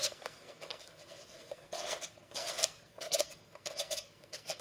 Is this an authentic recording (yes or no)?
no